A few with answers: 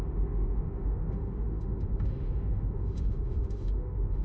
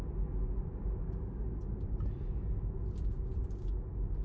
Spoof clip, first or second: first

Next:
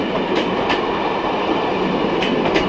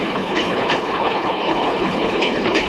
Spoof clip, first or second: second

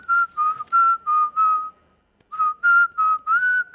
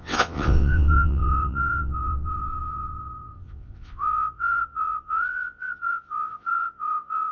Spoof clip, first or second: second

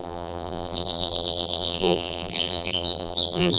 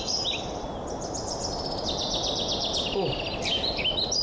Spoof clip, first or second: first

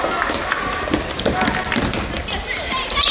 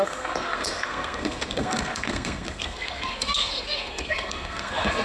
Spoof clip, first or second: second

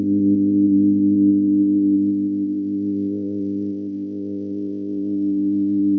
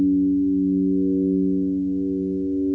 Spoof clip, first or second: first